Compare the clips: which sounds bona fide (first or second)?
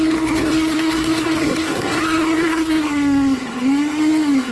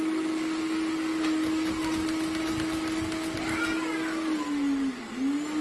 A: second